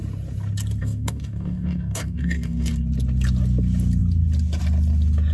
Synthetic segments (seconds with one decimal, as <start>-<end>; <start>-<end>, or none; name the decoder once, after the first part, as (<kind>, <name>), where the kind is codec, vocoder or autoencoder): 0.8-2.7 (codec, DAC)